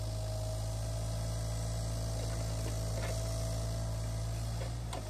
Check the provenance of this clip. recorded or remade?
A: recorded